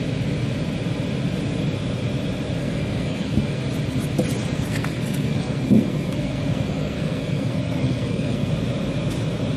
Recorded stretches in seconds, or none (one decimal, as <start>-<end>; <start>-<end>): 0.0-2.6; 3.6-4.4; 8.5-9.6